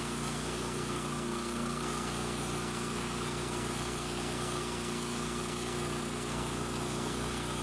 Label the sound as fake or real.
fake